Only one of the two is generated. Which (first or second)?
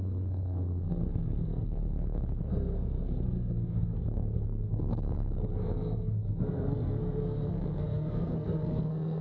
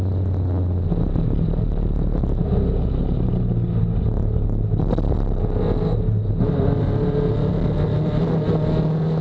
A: first